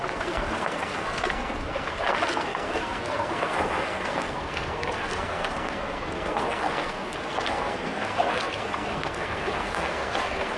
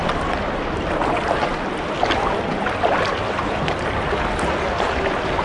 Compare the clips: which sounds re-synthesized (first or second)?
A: first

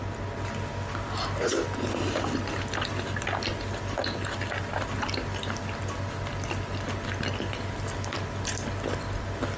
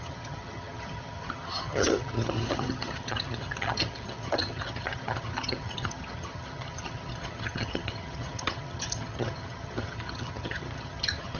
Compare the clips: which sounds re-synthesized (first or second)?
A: second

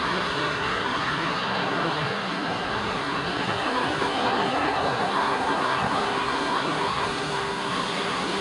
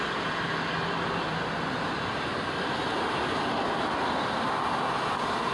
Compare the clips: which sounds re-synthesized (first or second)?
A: first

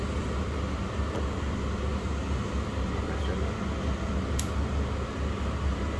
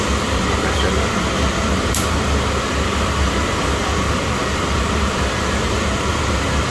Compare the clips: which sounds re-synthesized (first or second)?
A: second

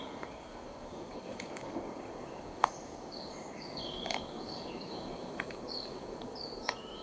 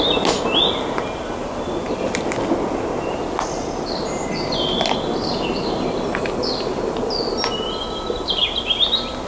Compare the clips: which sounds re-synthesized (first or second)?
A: first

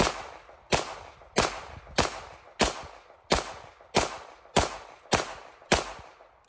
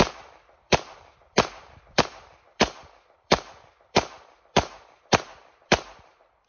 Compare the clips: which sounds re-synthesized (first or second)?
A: second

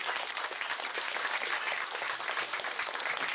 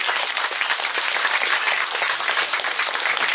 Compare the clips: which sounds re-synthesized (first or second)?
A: second